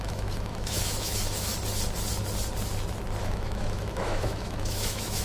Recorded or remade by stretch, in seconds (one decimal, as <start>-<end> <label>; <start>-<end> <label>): 0.0-1.5 remade; 1.5-3.2 recorded; 3.2-5.2 remade